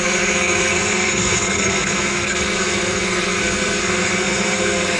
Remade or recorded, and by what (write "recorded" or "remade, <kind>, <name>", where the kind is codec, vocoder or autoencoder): remade, codec, SNAC